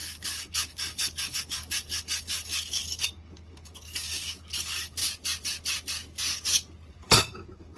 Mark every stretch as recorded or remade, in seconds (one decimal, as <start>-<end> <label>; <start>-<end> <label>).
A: 0.0-5.0 remade; 5.0-6.9 recorded; 6.9-7.8 remade